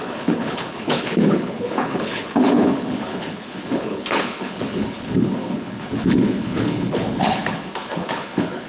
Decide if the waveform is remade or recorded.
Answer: remade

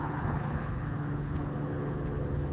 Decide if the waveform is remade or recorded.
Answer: remade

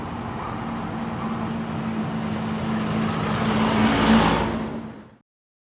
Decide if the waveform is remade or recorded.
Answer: recorded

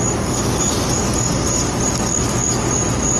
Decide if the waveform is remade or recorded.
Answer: recorded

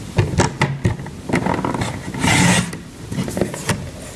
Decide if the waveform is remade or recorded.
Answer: recorded